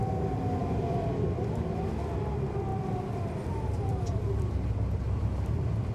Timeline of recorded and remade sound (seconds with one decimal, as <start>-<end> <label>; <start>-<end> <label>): 0.0-0.6 recorded; 0.6-1.1 remade; 1.1-2.7 recorded; 2.7-5.9 remade